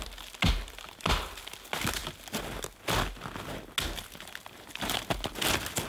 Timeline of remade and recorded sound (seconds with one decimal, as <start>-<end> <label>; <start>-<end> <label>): 0.0-5.9 recorded